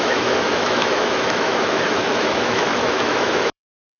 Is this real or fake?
fake